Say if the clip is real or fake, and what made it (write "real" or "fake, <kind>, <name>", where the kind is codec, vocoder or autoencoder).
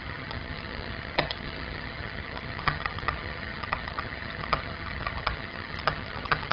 fake, vocoder, HiFi-GAN